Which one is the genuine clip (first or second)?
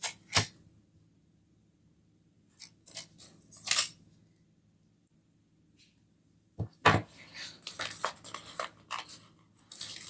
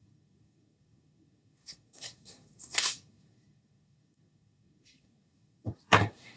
first